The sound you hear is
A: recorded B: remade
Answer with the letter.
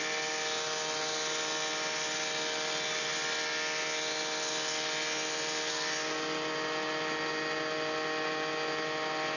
A